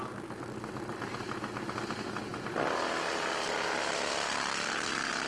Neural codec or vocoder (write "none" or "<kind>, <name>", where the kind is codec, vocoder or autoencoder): none